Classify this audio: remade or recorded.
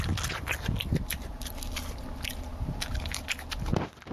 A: recorded